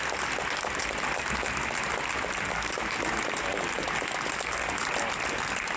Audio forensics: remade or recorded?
recorded